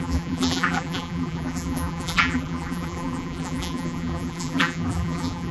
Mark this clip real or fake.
fake